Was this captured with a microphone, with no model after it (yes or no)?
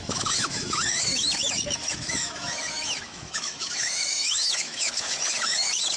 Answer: no